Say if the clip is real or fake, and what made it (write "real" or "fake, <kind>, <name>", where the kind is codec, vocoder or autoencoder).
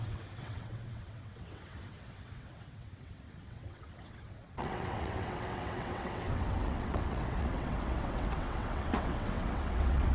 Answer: fake, vocoder, WaveNeXt